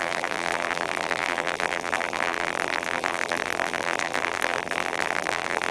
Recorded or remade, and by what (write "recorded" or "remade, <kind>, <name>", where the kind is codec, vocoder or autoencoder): remade, vocoder, BigVGAN v2